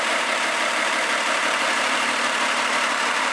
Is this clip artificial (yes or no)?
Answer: yes